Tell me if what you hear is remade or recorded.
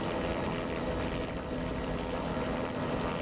remade